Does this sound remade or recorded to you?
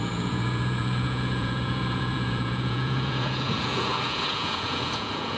remade